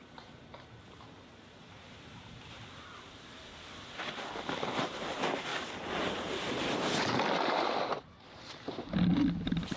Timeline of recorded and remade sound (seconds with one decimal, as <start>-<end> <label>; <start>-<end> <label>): 0.0-3.4 remade; 3.4-4.8 recorded; 4.8-5.5 remade; 5.5-9.8 recorded